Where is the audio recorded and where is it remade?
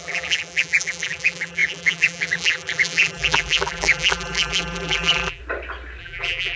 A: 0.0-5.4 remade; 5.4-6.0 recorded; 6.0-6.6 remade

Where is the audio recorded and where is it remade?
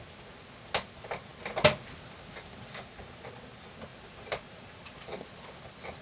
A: 0.0-3.9 recorded; 3.9-5.0 remade; 5.0-6.0 recorded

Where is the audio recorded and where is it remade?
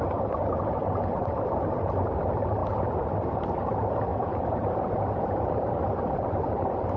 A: 0.0-2.6 remade; 2.6-3.3 recorded; 3.3-7.0 remade